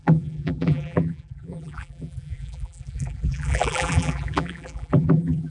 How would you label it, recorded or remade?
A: remade